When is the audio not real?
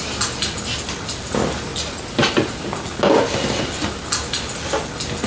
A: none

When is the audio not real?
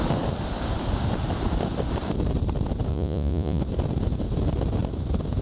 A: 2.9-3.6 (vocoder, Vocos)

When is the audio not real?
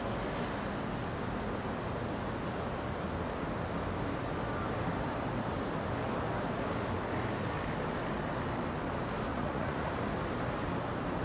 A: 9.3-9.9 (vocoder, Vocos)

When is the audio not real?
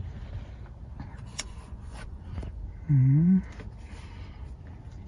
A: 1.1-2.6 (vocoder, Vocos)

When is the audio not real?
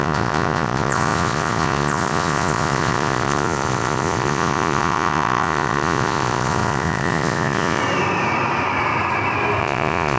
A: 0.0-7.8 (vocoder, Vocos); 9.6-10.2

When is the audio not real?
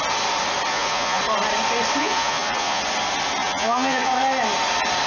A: 0.7-1.2 (vocoder, Vocos); 2.0-2.8; 3.4-4.1